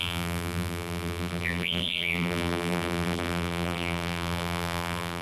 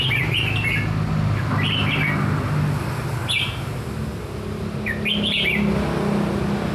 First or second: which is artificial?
first